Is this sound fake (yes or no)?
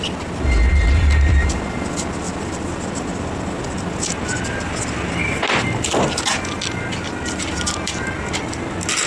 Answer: no